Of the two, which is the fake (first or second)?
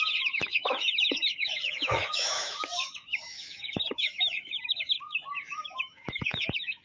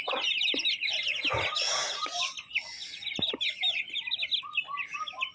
first